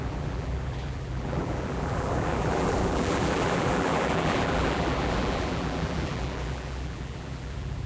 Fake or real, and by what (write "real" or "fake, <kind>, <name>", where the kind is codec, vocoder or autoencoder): fake, vocoder, BigVGAN v2